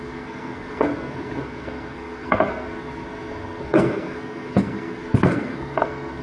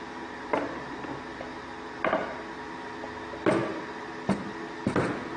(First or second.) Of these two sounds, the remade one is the first